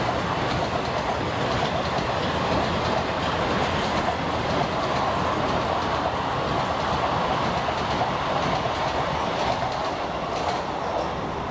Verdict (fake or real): real